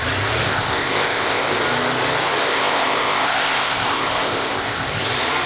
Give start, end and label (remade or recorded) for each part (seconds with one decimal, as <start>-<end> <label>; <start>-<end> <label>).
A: 0.0-0.4 recorded; 0.4-1.6 remade; 1.6-2.4 recorded; 2.4-5.0 remade; 5.0-5.5 recorded